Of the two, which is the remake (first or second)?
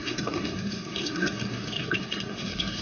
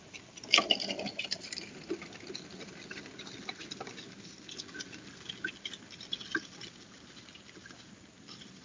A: first